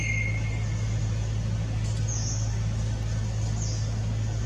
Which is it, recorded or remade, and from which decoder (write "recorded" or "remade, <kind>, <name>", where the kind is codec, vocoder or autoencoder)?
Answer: recorded